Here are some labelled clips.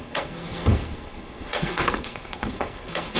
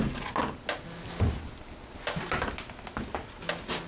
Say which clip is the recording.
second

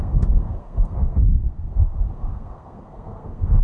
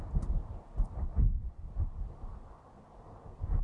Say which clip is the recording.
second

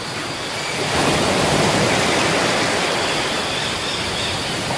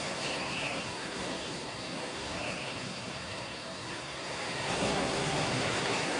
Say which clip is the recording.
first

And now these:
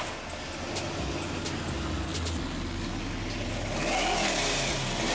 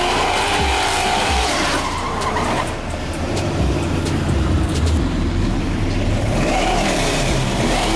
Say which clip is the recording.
first